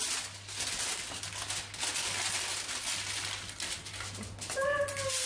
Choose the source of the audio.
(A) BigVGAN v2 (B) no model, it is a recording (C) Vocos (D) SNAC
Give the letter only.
B